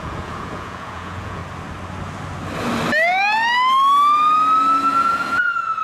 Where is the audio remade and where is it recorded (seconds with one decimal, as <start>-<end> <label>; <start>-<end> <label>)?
0.0-1.4 remade; 1.4-4.9 recorded; 4.9-5.8 remade